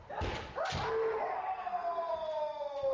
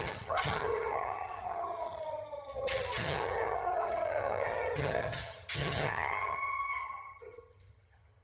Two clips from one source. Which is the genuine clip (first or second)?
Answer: first